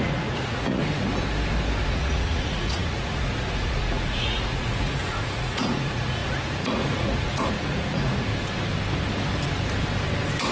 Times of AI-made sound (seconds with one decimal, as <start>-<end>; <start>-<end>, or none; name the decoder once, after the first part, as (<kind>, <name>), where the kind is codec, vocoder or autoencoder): 0.0-0.8 (vocoder, Vocos); 1.8-8.3